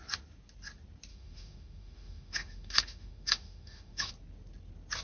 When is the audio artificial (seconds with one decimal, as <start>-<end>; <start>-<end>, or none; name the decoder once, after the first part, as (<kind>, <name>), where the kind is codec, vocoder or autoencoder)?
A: 1.1-4.1 (autoencoder, DAC-VAE)